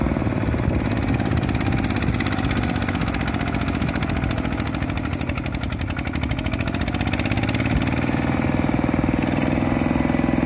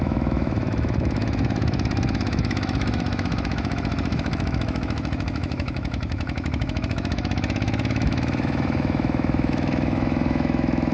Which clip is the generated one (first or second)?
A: second